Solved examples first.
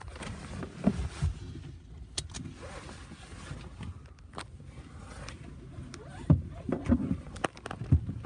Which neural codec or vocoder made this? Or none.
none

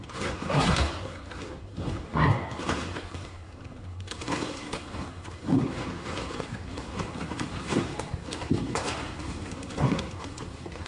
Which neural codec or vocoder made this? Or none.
codec, SNAC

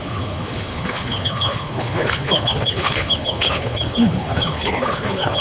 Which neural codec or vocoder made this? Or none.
codec, HILCodec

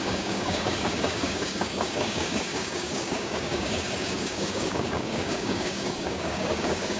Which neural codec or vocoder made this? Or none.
codec, DAC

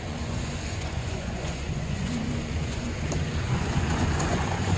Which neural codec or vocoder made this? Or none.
vocoder, Vocos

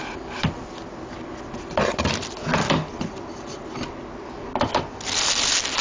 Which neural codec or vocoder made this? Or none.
none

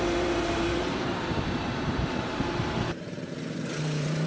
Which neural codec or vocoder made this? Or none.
vocoder, BigVGAN v2